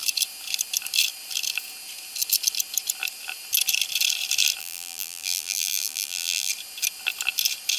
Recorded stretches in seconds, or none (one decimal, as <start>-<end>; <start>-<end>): 0.0-4.6; 6.5-7.8